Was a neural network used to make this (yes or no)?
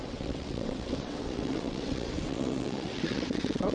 yes